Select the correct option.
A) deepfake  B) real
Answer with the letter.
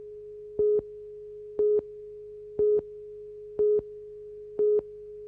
B